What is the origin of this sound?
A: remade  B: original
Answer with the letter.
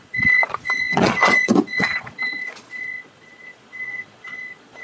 A